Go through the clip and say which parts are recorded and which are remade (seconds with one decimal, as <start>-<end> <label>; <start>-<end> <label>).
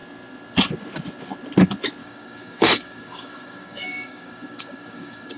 0.0-2.0 recorded; 2.0-5.4 remade